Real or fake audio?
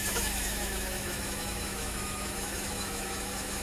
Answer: fake